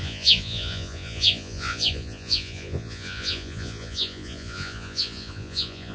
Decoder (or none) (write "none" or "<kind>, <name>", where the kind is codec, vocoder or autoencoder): vocoder, Vocos